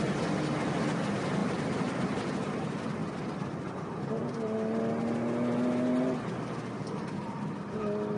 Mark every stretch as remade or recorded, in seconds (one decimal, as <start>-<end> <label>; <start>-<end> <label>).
0.0-1.4 recorded; 1.4-2.6 remade; 2.6-8.2 recorded